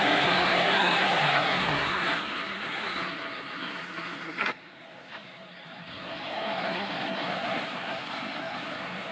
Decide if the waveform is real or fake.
fake